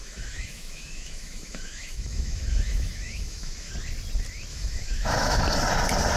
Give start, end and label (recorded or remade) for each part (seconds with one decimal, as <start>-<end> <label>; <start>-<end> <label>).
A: 0.0-3.7 remade; 3.7-4.5 recorded; 4.5-5.4 remade; 5.4-6.2 recorded